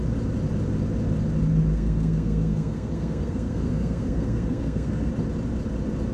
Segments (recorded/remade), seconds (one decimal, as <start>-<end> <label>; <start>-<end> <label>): 0.0-1.7 recorded; 1.7-5.1 remade; 5.1-6.1 recorded